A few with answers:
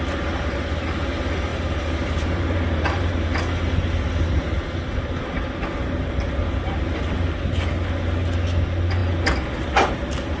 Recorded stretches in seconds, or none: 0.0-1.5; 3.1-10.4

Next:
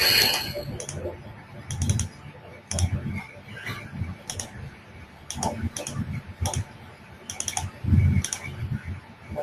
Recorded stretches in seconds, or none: 0.0-2.5; 4.0-9.4

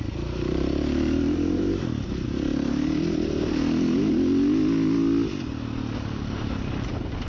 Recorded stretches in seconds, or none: 2.5-6.4